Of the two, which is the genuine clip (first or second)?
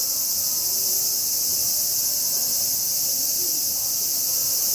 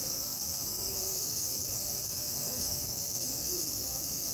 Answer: first